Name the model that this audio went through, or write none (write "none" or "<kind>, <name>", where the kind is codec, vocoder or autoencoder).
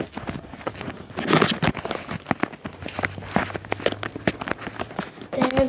none